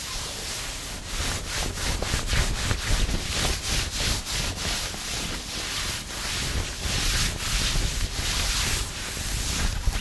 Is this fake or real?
real